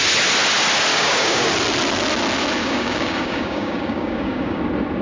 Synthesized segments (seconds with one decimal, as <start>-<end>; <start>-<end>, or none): 0.9-1.5; 2.6-4.6